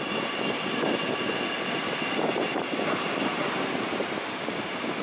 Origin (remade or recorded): recorded